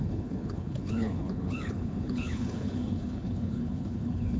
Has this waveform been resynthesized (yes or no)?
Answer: yes